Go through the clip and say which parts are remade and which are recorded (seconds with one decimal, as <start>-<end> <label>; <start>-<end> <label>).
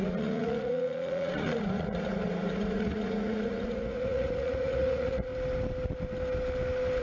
0.0-5.3 remade; 5.3-7.0 recorded